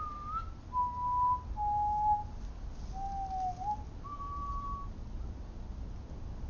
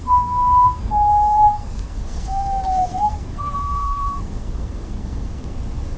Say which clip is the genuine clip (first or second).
first